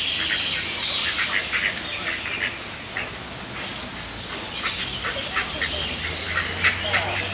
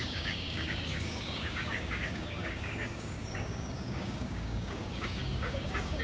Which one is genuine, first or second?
first